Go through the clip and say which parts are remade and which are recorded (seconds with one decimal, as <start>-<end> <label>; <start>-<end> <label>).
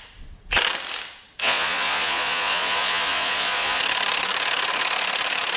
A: 0.0-1.4 recorded; 1.4-3.8 remade; 3.8-5.6 recorded